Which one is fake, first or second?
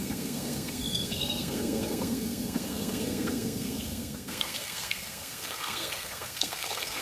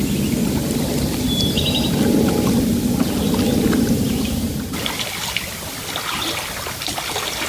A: first